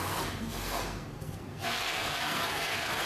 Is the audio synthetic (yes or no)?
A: yes